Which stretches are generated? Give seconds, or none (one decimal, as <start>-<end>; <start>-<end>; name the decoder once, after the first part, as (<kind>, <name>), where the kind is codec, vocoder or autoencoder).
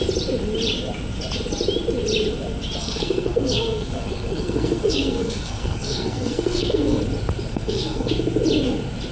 2.8-7.0 (codec, SNAC); 7.5-8.1